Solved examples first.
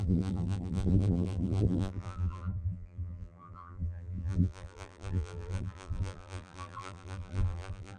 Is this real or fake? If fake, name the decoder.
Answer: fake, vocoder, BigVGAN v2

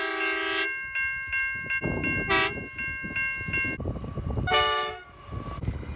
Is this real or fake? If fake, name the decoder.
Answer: real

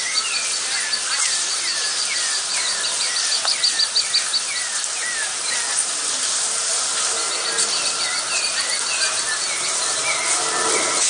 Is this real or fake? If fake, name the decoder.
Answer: real